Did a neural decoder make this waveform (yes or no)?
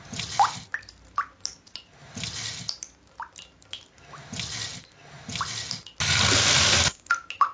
no